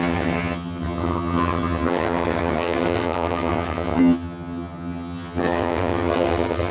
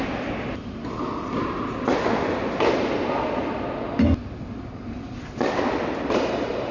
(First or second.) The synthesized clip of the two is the first